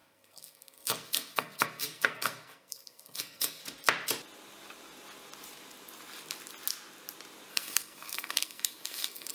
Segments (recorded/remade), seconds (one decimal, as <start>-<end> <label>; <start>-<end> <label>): 0.0-3.6 remade; 3.6-7.5 recorded; 7.5-9.3 remade